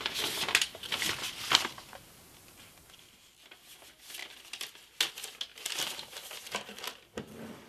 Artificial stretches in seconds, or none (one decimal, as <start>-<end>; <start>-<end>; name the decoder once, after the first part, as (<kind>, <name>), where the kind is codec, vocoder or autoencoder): 5.5-7.7 (vocoder, BigVGAN v2)